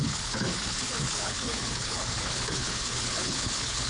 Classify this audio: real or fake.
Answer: fake